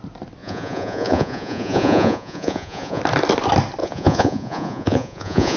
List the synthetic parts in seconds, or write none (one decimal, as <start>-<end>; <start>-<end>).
0.4-3.0; 3.8-5.6